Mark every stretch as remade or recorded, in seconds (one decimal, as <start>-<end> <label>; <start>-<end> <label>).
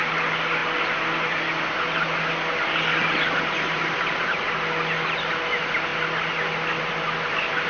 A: 0.0-7.7 recorded